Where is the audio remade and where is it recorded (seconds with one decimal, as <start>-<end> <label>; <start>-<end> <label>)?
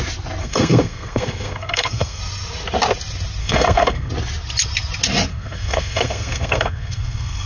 0.0-0.4 recorded; 0.4-2.2 remade; 2.2-3.4 recorded; 3.4-4.1 remade; 4.1-5.3 recorded; 5.3-7.5 remade